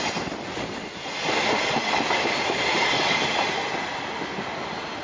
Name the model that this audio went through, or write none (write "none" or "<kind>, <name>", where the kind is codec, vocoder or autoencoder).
none